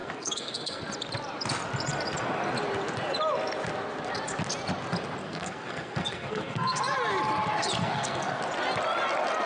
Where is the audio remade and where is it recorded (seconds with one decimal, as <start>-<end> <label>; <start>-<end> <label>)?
0.0-0.8 remade; 0.8-5.2 recorded; 5.2-6.8 remade; 6.8-7.8 recorded; 7.8-8.4 remade; 8.4-9.5 recorded